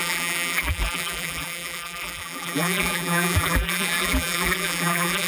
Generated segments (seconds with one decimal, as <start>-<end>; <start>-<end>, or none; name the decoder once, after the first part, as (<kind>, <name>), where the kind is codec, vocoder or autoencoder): 0.0-5.3 (vocoder, BigVGAN v2)